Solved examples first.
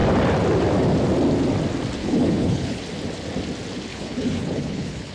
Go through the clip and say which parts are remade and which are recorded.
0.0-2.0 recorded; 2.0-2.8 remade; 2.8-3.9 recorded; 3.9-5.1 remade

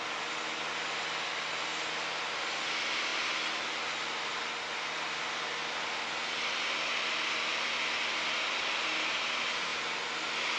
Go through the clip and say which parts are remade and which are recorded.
0.0-10.6 recorded

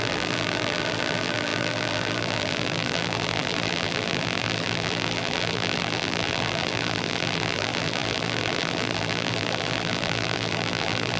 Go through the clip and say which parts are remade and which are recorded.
0.0-11.2 remade

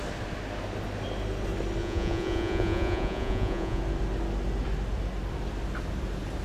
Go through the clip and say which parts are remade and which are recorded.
0.0-1.8 recorded; 1.8-3.8 remade; 3.8-6.4 recorded

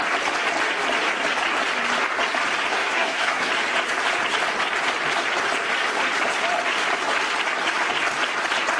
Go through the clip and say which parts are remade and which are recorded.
0.0-2.7 recorded; 2.7-3.5 remade; 3.5-8.8 recorded

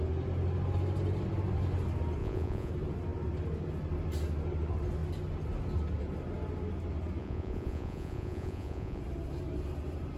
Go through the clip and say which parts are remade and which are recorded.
0.0-2.2 recorded; 2.2-2.7 remade; 2.7-7.2 recorded; 7.2-9.0 remade; 9.0-10.2 recorded

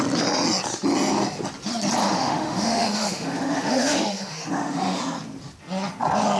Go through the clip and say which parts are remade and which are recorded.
0.0-2.0 recorded; 2.0-5.0 remade; 5.0-6.4 recorded